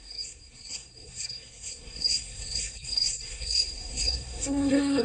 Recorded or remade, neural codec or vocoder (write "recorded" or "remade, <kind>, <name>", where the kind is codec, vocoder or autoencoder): remade, codec, SNAC